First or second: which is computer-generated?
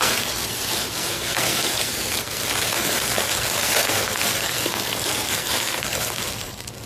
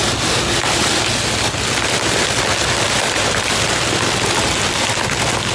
first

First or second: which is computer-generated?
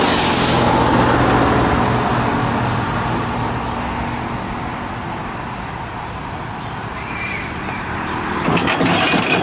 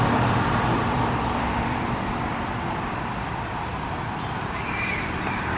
second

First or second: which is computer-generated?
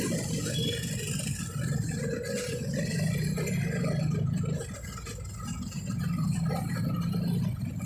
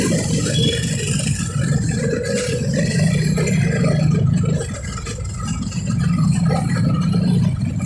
second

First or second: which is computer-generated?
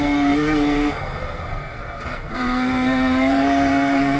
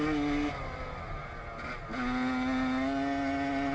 first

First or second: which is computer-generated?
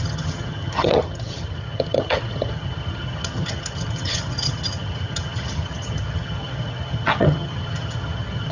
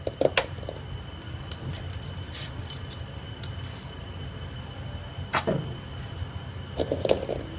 first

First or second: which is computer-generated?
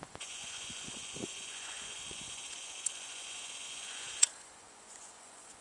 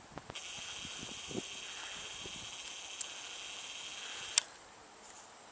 first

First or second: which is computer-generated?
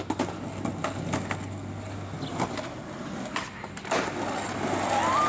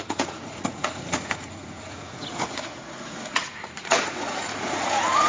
second